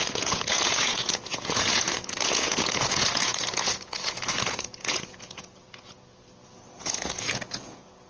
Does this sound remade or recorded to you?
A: remade